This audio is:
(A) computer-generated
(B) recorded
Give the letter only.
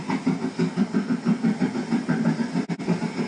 B